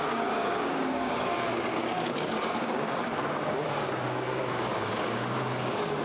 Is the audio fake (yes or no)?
yes